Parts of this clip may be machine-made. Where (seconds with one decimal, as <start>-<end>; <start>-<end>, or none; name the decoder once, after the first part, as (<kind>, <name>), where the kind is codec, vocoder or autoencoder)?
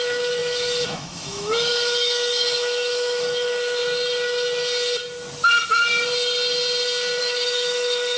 0.0-3.8 (autoencoder, DAC-VAE); 7.2-8.2